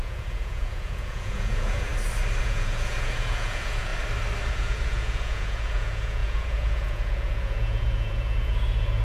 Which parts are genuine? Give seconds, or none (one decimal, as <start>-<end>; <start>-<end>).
1.9-2.4; 3.9-4.5